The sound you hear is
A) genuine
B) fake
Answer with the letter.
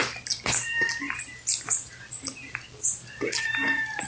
A